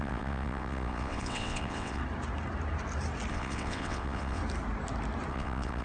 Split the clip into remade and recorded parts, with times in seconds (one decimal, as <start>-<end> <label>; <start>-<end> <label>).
0.0-2.0 remade; 2.0-3.3 recorded; 3.3-4.4 remade; 4.4-5.3 recorded; 5.3-5.8 remade